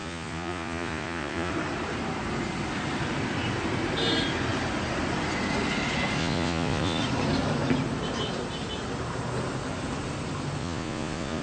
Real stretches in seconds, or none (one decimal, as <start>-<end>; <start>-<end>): 1.5-6.2; 7.0-10.6